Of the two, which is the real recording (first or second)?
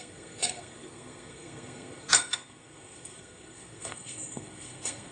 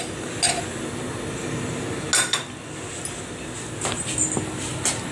second